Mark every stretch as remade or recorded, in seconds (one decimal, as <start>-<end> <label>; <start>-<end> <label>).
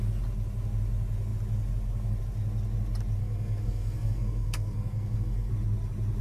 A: 0.0-3.2 recorded; 3.2-5.5 remade; 5.5-6.2 recorded